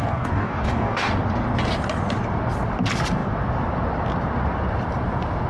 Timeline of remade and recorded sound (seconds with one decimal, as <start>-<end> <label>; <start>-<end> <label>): 0.0-1.1 remade; 1.1-5.5 recorded